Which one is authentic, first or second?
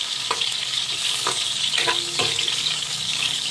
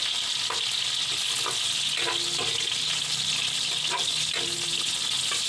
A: second